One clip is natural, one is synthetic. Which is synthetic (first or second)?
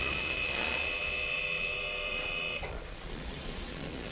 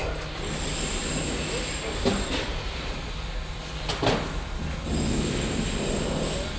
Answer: first